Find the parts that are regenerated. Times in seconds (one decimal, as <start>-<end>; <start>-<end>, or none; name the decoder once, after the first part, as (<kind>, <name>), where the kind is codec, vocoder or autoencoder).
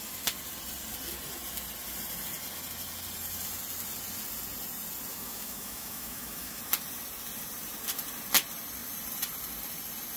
5.1-6.6 (autoencoder, DAC-VAE)